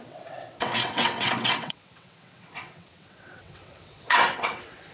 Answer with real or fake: fake